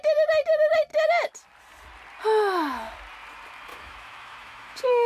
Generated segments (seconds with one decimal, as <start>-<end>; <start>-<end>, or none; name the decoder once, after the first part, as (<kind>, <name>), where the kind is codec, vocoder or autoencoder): 3.7-5.1 (autoencoder, DAC-VAE)